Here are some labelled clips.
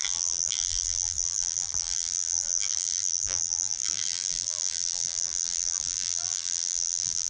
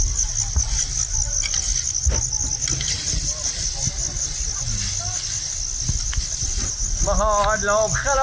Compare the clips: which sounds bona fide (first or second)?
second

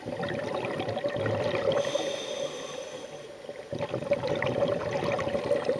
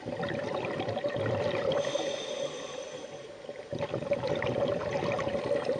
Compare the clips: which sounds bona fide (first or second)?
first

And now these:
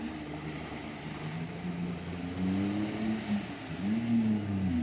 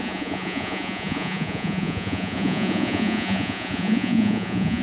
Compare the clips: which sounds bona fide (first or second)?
first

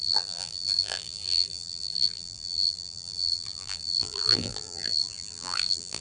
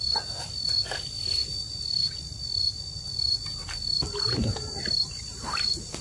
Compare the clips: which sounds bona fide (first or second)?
second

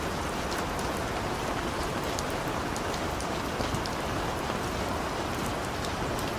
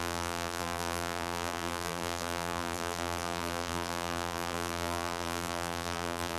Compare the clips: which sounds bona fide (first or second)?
first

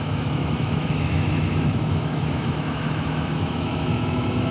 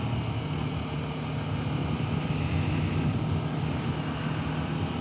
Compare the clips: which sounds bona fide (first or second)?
second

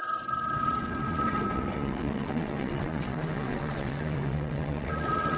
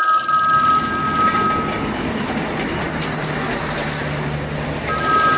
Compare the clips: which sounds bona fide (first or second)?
second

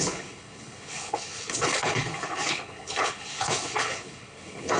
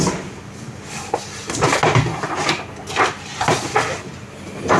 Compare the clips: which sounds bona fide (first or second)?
second